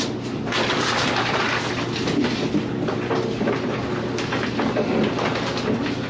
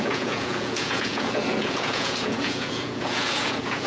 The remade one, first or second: second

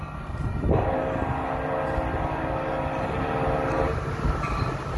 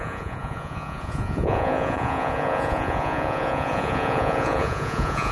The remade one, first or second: second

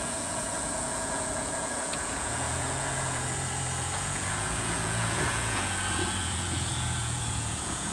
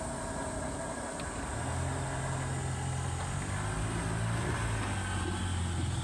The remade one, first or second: first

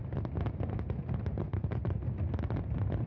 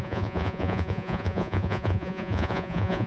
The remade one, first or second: second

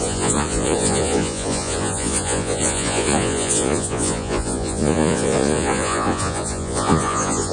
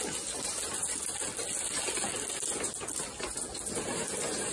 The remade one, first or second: first